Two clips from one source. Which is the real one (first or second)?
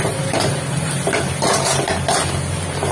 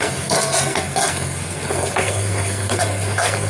first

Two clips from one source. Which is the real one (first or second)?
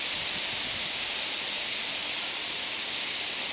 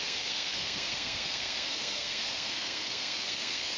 first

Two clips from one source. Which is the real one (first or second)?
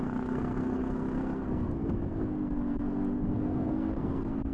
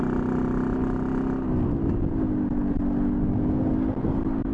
second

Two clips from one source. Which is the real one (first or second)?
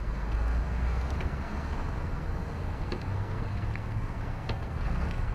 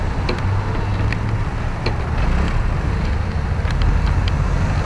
second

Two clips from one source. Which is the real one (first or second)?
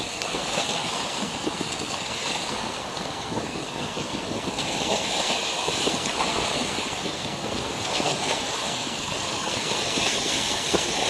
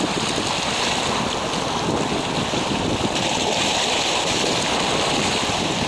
second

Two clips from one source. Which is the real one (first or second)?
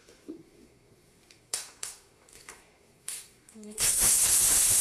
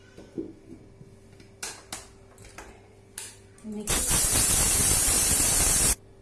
second